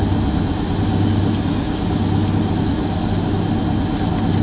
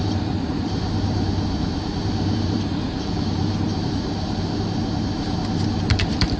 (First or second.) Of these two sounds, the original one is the first